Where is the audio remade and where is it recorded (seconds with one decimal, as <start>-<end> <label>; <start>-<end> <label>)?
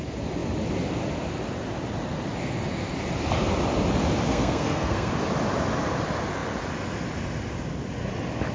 0.0-4.3 recorded; 4.3-5.1 remade; 5.1-8.5 recorded